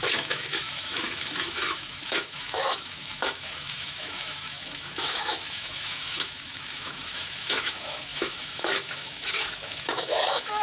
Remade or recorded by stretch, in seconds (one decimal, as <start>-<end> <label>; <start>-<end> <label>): 0.0-10.6 remade